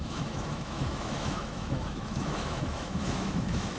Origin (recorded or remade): remade